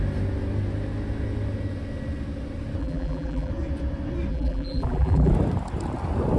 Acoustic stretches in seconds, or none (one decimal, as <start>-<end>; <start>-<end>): 0.0-2.8; 3.5-4.3; 5.3-6.4